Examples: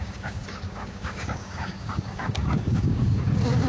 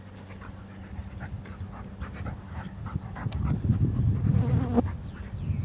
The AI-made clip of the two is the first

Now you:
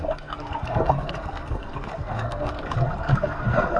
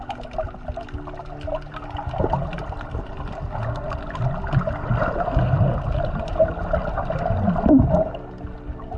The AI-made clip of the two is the first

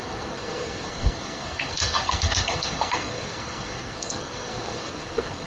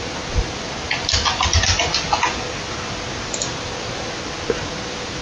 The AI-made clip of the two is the first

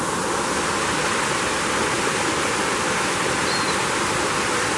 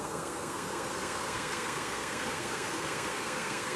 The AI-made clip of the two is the second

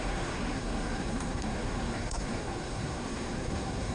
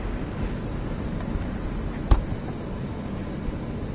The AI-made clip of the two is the first